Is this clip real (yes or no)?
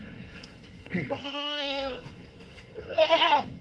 no